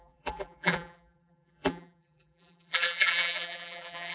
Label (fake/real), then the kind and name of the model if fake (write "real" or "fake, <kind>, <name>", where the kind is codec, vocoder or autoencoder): fake, vocoder, BigVGAN v2